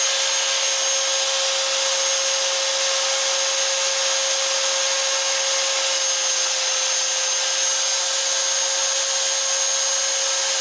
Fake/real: real